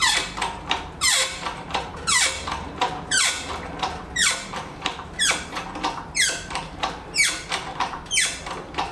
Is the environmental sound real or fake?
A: fake